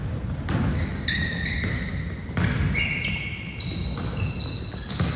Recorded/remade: recorded